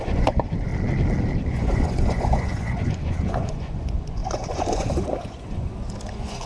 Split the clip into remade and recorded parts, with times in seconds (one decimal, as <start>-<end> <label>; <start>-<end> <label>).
0.0-0.7 remade; 0.7-1.5 recorded; 1.5-6.5 remade

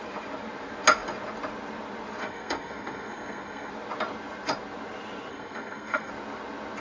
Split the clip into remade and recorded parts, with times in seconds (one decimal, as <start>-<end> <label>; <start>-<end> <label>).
0.0-2.2 recorded; 2.2-3.7 remade; 3.7-5.3 recorded; 5.3-6.1 remade; 6.1-6.8 recorded